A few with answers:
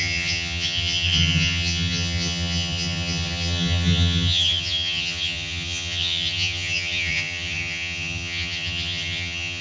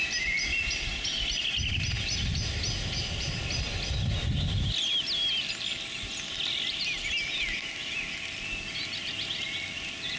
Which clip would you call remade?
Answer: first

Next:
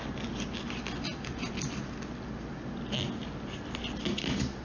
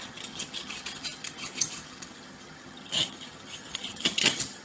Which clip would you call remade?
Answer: second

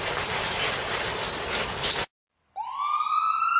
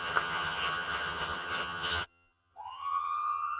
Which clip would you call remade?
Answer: second